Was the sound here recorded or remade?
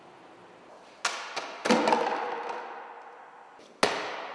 recorded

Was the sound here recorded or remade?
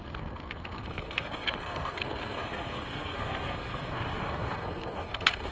remade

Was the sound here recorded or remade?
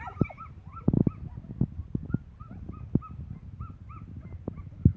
recorded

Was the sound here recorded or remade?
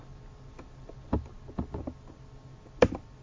recorded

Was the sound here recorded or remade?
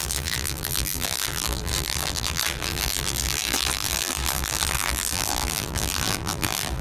remade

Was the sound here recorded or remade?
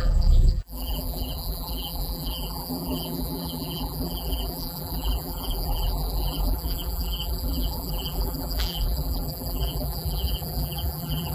remade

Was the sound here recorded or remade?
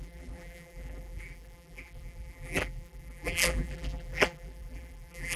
remade